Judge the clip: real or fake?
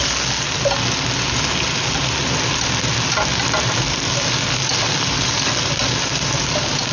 real